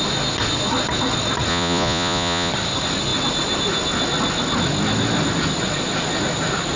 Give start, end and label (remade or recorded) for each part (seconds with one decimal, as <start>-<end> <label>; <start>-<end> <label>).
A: 0.0-1.5 recorded; 1.5-2.5 remade; 2.5-6.8 recorded